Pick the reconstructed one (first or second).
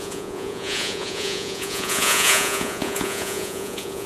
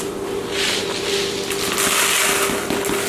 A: first